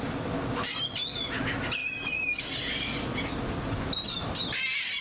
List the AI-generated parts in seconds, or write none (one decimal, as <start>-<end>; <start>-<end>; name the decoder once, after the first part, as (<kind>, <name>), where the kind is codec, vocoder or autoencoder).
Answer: none